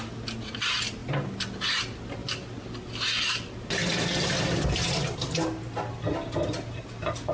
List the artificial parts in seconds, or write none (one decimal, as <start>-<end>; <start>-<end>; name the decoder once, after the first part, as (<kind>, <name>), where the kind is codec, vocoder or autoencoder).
none